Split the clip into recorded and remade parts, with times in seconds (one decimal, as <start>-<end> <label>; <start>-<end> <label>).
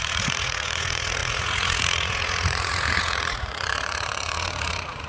0.0-5.1 remade